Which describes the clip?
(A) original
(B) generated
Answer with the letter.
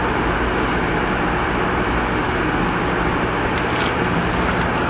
A